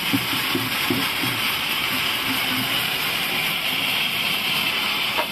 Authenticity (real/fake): fake